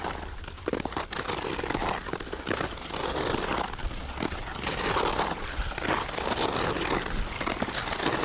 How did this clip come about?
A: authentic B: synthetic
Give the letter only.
A